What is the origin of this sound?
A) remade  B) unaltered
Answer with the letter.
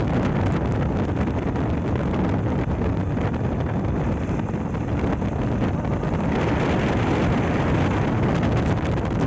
B